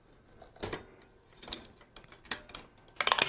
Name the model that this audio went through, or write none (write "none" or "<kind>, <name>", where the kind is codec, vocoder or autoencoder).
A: none